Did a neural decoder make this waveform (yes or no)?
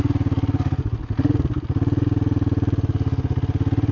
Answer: no